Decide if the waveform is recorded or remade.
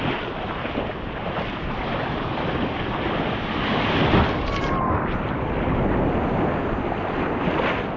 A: recorded